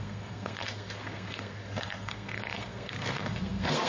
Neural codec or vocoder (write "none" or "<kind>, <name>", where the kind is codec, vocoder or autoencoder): codec, SNAC